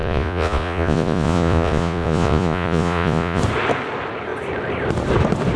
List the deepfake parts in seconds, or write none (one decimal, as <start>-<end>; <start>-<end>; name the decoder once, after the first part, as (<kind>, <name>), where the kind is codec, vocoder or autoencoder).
0.0-3.4 (vocoder, Vocos)